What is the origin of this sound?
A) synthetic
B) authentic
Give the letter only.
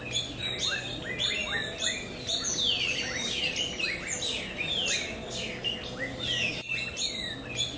B